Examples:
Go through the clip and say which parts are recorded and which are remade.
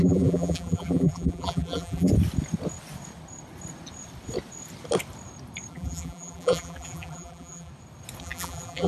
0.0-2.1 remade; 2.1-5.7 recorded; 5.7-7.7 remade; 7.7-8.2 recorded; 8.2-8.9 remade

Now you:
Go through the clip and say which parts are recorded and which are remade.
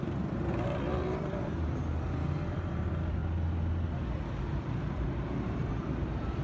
0.0-1.9 remade; 1.9-2.5 recorded; 2.5-3.2 remade; 3.2-4.4 recorded; 4.4-6.4 remade